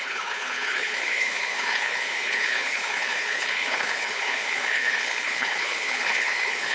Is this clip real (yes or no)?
no